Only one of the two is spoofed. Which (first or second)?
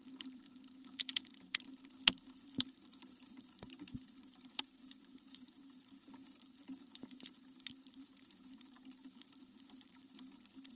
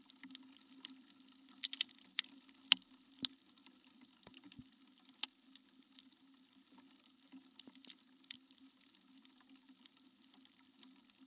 first